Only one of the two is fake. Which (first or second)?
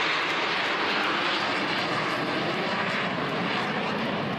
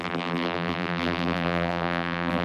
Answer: second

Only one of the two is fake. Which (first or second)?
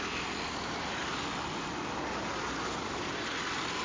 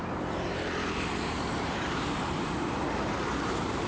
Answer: second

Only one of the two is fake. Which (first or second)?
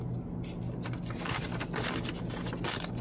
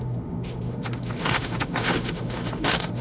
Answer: second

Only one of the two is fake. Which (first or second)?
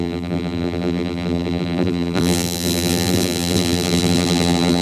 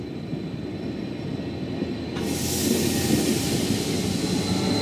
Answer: first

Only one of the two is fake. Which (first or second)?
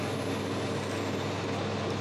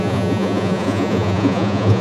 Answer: second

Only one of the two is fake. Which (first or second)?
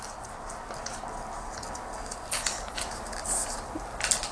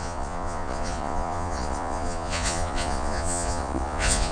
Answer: second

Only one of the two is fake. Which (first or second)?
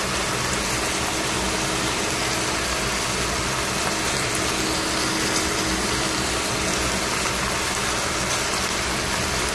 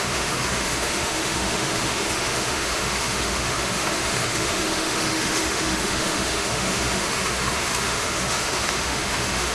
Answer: second